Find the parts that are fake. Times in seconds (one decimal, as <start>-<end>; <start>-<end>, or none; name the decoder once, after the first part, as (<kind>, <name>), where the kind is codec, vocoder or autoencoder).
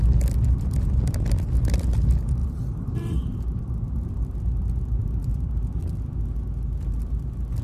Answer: 2.4-3.7 (vocoder, BigVGAN v2); 4.6-5.5